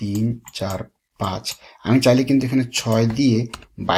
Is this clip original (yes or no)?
yes